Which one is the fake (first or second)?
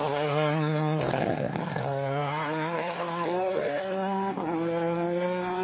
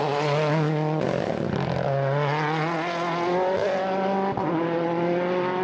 first